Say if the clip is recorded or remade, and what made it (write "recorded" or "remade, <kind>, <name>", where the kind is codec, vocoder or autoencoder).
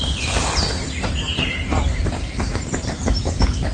recorded